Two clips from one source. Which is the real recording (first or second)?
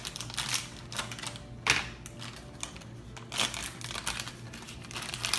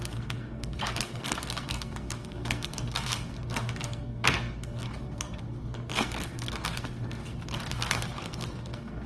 first